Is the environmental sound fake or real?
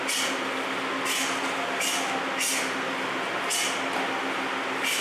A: real